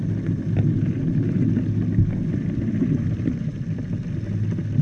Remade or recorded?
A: recorded